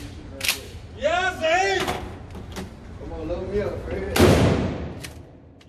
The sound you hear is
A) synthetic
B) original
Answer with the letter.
B